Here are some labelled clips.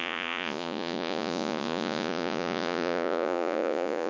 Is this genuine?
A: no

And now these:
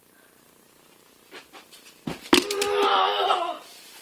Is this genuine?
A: yes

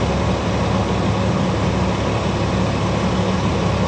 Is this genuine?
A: yes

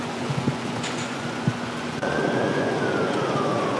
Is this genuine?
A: no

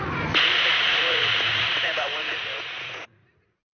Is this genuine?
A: no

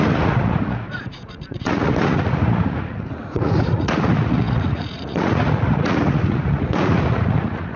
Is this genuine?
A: no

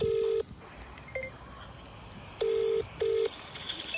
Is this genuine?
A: yes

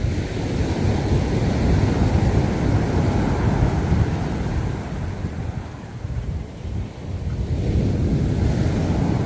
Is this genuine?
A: yes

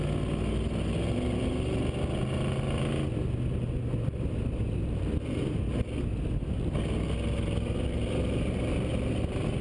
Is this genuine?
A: yes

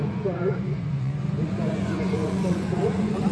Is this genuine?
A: no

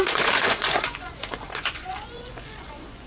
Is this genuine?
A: no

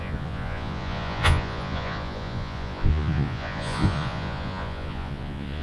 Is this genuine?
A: no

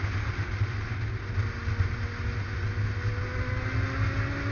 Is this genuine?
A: yes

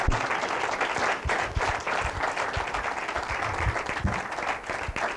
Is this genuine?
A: yes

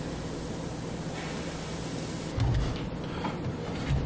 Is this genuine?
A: yes